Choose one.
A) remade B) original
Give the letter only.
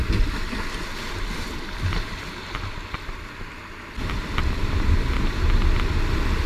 B